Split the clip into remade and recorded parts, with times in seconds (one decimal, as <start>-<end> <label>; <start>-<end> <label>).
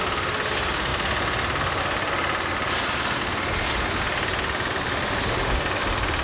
0.0-6.2 recorded